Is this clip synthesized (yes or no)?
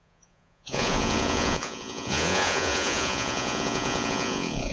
yes